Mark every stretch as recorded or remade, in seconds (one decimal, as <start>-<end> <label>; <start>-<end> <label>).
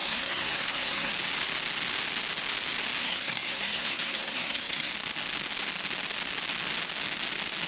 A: 0.0-1.1 remade; 1.1-3.0 recorded; 3.0-4.9 remade; 4.9-7.7 recorded